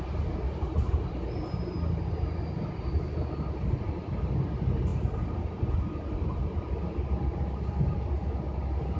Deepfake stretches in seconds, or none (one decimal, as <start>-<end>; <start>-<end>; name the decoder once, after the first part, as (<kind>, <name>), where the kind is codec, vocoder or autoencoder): none